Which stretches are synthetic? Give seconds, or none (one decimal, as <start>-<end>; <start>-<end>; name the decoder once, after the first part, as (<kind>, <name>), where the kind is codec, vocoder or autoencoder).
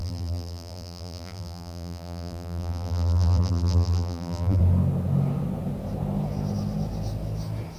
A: 0.0-4.6 (vocoder, BigVGAN v2)